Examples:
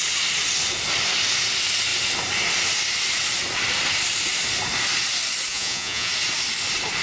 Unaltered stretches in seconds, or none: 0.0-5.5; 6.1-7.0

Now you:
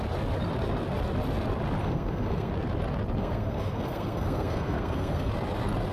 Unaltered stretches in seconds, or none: 0.0-1.8; 2.5-3.2; 5.3-5.9

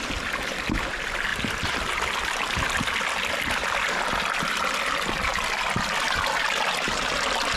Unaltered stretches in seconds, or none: 0.0-1.3; 4.2-7.6

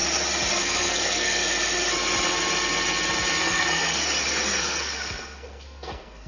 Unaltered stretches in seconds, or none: 0.0-0.5; 1.4-3.4; 4.0-4.6

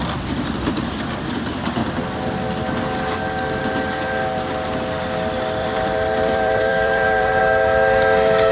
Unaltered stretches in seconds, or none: 0.0-5.6; 7.4-8.5

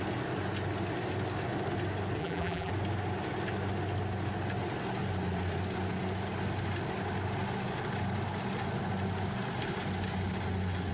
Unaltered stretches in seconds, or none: 0.0-2.2; 2.7-10.9